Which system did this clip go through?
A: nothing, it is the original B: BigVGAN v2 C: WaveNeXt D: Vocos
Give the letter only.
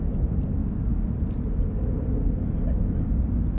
A